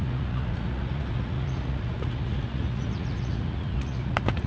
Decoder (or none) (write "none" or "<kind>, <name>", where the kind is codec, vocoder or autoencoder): vocoder, Vocos